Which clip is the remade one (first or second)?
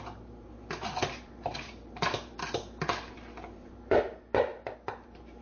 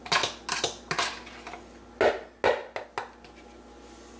first